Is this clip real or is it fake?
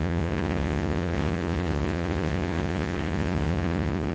fake